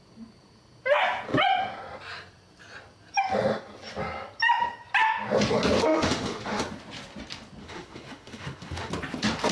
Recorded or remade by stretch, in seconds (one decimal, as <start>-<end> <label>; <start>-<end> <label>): 0.0-5.8 recorded; 5.8-6.6 remade; 6.6-7.6 recorded; 7.6-8.9 remade; 8.9-9.5 recorded